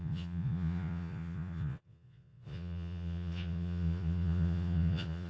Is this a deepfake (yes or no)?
yes